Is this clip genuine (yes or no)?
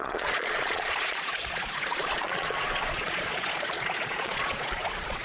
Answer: no